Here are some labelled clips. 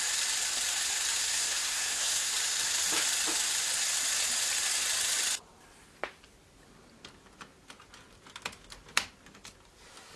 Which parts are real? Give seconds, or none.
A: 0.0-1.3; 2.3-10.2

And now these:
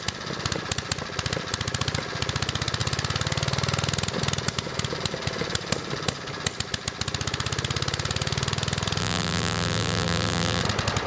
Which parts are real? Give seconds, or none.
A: 0.0-9.0; 10.6-11.1

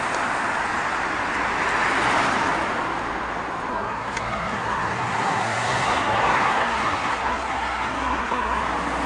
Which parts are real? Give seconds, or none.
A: 0.0-3.7; 8.6-9.1

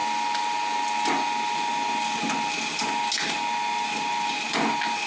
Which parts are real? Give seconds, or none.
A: 0.0-5.1

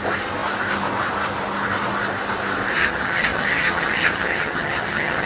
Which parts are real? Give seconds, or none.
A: 0.0-2.8